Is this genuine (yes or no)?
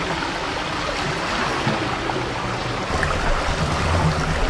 yes